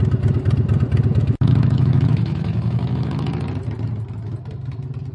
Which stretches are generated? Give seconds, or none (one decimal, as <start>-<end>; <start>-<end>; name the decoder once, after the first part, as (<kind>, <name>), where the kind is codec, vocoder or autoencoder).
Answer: 1.2-3.3 (autoencoder, DAC-VAE)